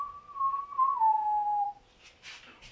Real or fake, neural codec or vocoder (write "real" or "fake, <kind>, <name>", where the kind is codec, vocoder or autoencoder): real